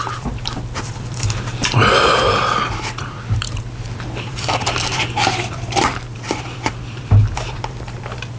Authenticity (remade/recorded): remade